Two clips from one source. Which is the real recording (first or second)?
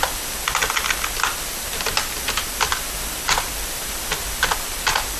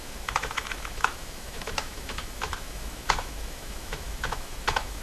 first